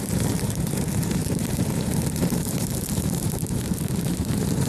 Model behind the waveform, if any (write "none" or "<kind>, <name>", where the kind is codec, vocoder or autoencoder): vocoder, BigVGAN v2